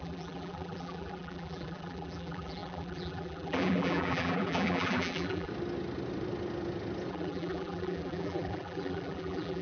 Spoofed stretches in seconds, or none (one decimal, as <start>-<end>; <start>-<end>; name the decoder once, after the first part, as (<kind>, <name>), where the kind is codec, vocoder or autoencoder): 0.0-5.5 (vocoder, BigVGAN v2); 7.1-9.6